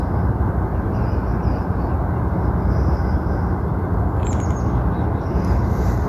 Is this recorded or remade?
recorded